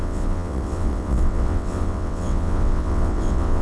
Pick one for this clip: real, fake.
fake